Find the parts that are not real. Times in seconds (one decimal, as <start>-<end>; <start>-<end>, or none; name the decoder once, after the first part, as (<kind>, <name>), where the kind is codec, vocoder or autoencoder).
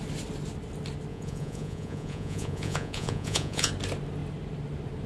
1.1-3.7 (vocoder, Vocos)